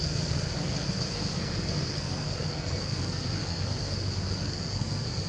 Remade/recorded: remade